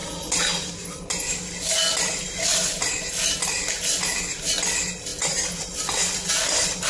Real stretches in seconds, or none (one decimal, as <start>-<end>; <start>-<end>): 0.0-6.9